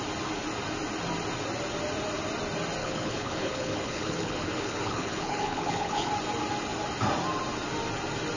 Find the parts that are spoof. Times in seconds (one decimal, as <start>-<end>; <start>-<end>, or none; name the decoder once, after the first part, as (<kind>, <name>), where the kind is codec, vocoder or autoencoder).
2.8-6.1 (codec, HILCodec)